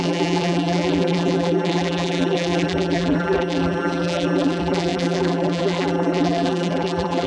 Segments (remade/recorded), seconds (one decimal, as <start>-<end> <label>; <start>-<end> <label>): 0.0-7.3 remade

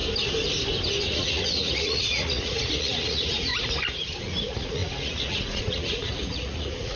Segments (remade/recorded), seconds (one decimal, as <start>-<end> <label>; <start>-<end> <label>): 0.0-1.0 recorded; 1.0-3.5 remade; 3.5-4.2 recorded; 4.2-7.0 remade

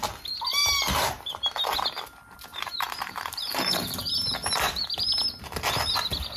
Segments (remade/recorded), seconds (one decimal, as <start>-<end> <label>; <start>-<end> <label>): 0.0-0.6 recorded; 0.6-2.0 remade; 2.0-2.5 recorded; 2.5-4.0 remade; 4.0-6.4 recorded

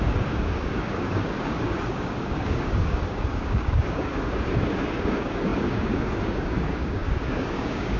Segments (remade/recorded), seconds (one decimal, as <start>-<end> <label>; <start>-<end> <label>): 0.0-8.0 remade

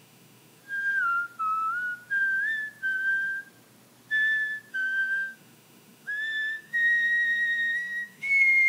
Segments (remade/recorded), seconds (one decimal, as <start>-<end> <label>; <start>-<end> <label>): 0.0-0.6 remade; 0.6-4.7 recorded; 4.7-8.7 remade

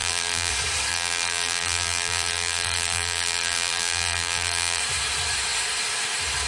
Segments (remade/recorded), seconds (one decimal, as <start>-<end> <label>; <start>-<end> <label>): 0.0-0.5 remade; 0.5-0.9 recorded; 0.9-4.8 remade; 4.8-6.5 recorded

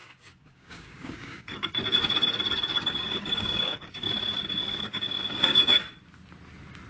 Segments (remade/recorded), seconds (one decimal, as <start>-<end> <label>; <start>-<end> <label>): 0.0-1.7 remade; 1.7-2.7 recorded; 2.7-4.1 remade; 4.1-4.6 recorded; 4.6-5.8 remade; 5.8-6.9 recorded